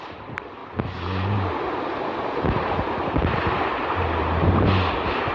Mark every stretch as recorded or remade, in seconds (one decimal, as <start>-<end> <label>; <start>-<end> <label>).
0.0-0.6 remade; 0.6-3.8 recorded; 3.8-5.3 remade